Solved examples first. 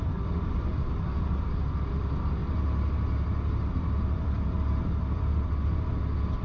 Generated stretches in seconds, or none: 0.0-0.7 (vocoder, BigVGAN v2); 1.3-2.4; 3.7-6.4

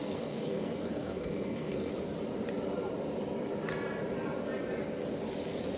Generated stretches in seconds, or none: 0.0-1.9 (codec, SNAC)

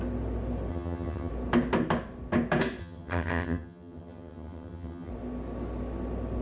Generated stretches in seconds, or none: 0.7-1.3 (vocoder, HiFi-GAN); 2.8-5.1

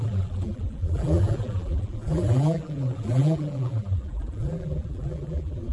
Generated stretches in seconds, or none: 0.0-5.7 (vocoder, BigVGAN v2)

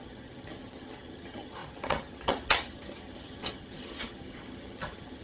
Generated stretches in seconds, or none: 0.0-5.2 (vocoder, HiFi-GAN)

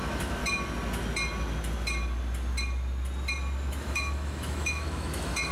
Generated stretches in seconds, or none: 0.0-0.4 (autoencoder, DAC-VAE); 3.7-5.5

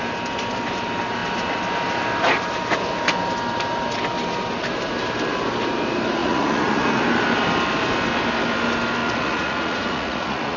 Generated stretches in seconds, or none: 6.2-7.0 (vocoder, Vocos); 9.0-10.6